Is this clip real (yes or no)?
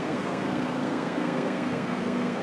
no